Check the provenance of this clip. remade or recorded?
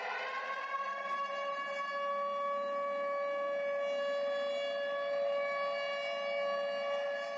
recorded